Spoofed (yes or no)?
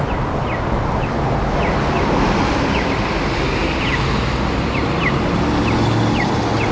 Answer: no